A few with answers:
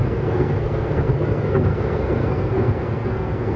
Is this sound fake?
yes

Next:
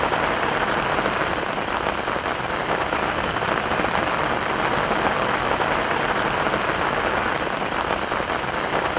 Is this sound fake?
yes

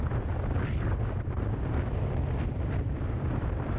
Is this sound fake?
yes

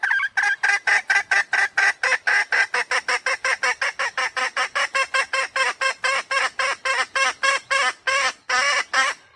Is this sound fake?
no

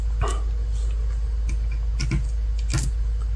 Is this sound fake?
no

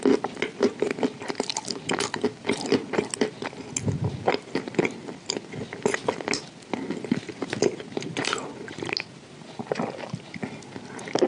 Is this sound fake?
no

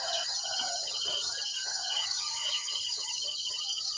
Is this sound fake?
yes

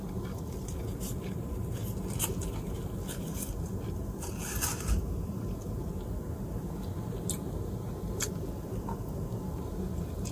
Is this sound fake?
no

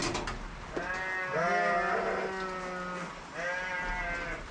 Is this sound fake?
no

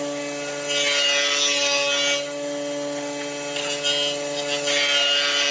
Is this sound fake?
no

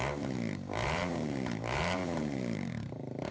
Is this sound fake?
yes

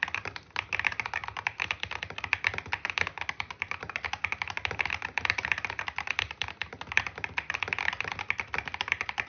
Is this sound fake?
no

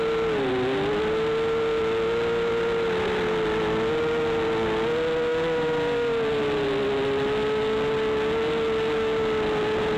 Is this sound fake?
no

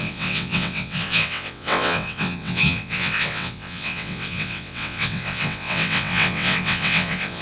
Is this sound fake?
yes